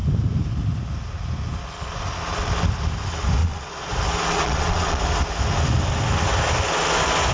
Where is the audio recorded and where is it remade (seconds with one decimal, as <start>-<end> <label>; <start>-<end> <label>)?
0.0-3.4 recorded; 3.4-3.9 remade; 3.9-4.3 recorded; 4.3-5.0 remade; 5.0-7.3 recorded